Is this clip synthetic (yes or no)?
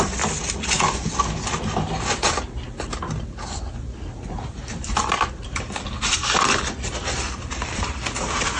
no